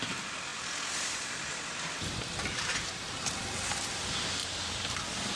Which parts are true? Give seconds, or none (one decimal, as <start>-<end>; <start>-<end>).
0.0-4.4; 5.0-5.4